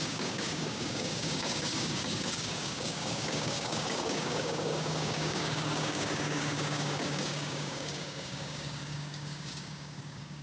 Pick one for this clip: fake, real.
fake